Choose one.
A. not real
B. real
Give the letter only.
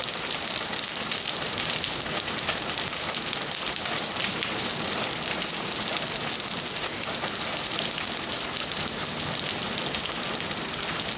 B